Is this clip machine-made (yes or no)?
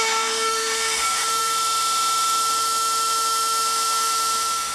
yes